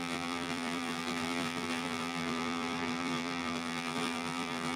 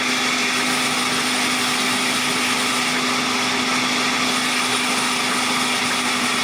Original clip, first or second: second